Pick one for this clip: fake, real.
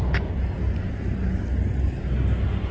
real